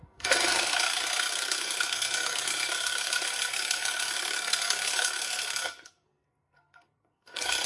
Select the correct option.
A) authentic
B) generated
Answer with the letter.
B